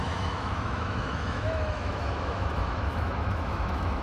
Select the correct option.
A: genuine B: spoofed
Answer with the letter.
B